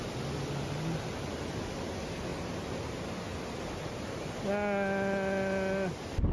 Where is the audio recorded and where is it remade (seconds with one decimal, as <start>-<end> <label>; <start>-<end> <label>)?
0.0-6.3 recorded